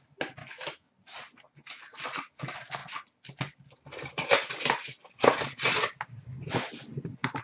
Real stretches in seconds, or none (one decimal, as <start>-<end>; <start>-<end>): 0.0-0.4; 0.9-7.4